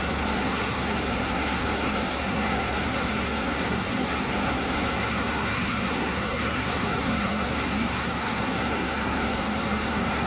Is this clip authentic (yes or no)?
no